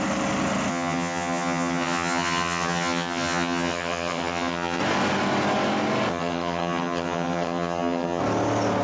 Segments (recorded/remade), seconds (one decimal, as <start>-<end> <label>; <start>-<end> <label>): 0.0-0.7 recorded; 0.7-4.8 remade; 4.8-6.1 recorded; 6.1-8.2 remade; 8.2-8.8 recorded